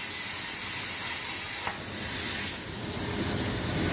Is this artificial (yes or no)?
no